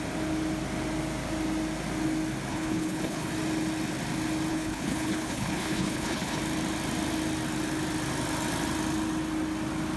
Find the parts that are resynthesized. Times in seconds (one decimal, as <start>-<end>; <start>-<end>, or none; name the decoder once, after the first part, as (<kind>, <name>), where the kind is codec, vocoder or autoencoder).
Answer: 2.5-3.3 (codec, HILCodec); 4.5-6.4